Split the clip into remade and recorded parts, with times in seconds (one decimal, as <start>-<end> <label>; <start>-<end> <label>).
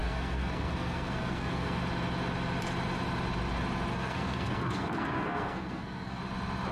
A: 0.0-1.8 remade; 1.8-3.9 recorded; 3.9-6.2 remade; 6.2-6.7 recorded